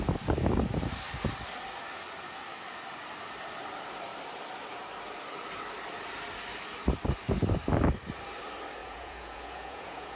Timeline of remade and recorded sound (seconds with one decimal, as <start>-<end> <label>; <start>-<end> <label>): 0.0-8.8 recorded; 8.8-10.2 remade